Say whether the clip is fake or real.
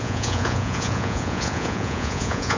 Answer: fake